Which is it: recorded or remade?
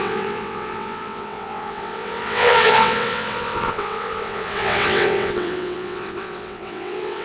remade